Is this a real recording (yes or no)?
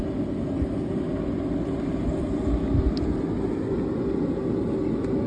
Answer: yes